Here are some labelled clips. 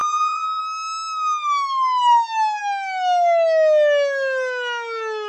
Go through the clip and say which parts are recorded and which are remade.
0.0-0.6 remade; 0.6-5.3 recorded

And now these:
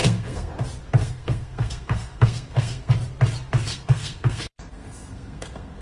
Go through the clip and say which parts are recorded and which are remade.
0.0-0.5 remade; 0.5-1.0 recorded; 1.0-2.9 remade; 2.9-3.7 recorded; 3.7-5.8 remade